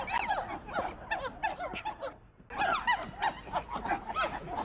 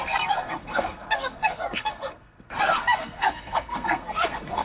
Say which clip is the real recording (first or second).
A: first